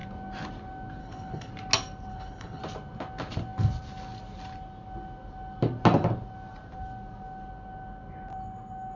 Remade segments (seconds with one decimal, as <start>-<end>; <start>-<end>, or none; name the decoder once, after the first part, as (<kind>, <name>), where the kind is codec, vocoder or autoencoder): 1.0-1.5 (codec, HILCodec); 2.1-2.6